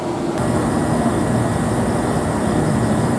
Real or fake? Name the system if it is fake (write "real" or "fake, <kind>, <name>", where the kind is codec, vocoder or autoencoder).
real